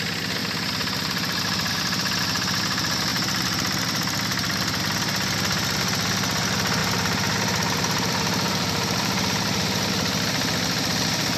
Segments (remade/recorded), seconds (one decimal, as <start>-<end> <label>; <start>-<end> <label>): 0.0-3.1 recorded; 3.1-4.8 remade; 4.8-6.8 recorded; 6.8-9.9 remade; 9.9-11.4 recorded